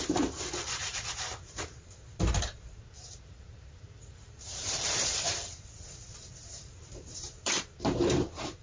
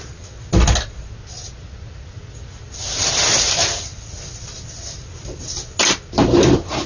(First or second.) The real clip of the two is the second